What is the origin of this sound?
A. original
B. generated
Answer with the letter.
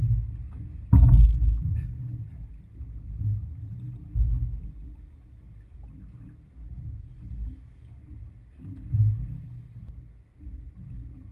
A